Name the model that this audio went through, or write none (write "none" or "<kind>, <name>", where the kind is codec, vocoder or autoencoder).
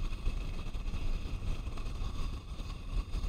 vocoder, BigVGAN v2